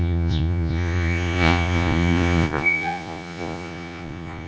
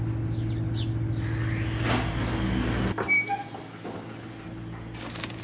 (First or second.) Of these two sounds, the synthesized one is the first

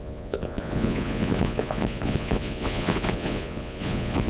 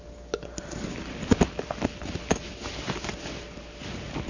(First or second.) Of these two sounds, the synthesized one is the first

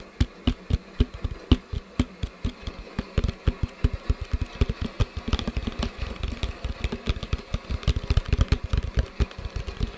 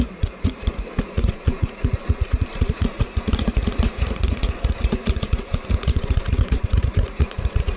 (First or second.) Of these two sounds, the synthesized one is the second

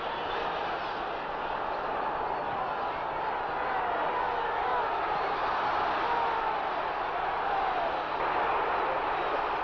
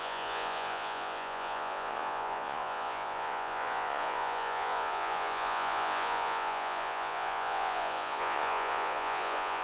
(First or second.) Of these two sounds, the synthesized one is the second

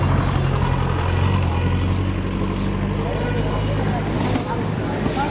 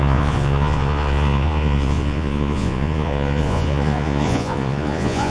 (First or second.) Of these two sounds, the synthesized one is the second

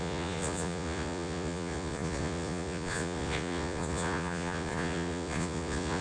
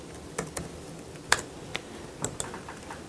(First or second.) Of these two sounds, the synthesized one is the first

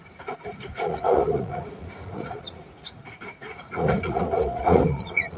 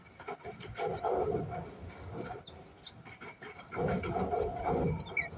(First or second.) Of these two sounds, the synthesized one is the first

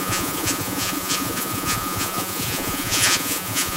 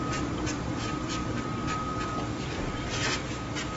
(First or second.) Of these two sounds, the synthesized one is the first